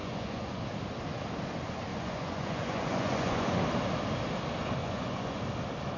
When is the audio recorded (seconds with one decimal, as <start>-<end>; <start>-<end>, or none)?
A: 0.6-1.9; 3.6-4.8; 5.4-6.0